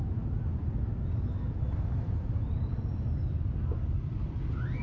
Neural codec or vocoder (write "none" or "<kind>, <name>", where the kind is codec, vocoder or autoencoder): none